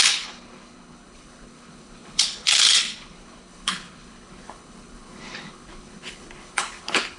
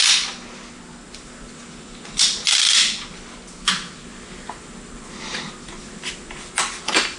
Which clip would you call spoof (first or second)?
first